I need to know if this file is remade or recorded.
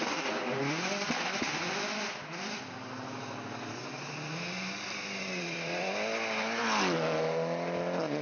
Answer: recorded